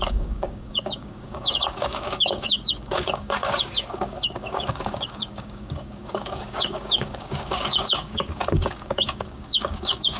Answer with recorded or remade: remade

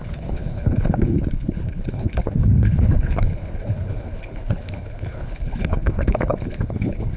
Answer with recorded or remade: remade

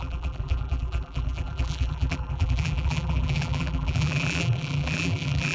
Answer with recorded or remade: remade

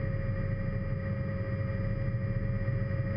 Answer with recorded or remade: recorded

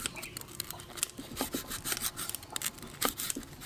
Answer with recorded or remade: recorded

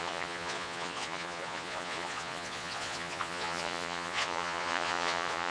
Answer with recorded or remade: remade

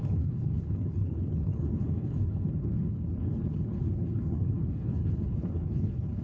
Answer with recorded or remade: remade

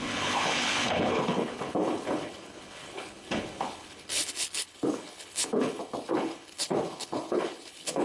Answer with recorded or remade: remade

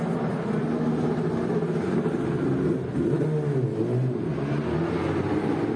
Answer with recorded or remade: recorded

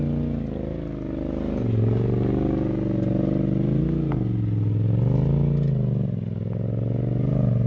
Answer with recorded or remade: recorded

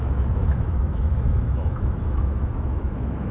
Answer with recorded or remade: remade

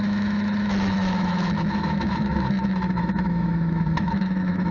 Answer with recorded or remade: remade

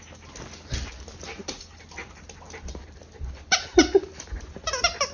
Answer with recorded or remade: recorded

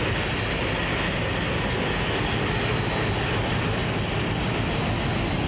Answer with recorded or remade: recorded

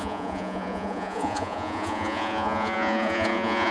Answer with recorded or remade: remade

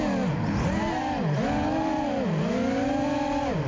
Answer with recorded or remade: recorded